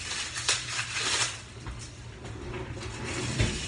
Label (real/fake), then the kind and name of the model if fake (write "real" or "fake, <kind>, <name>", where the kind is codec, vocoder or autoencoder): real